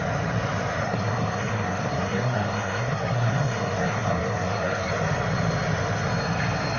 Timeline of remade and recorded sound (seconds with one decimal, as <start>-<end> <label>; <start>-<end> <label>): 0.0-0.8 recorded; 0.8-4.9 remade; 4.9-6.8 recorded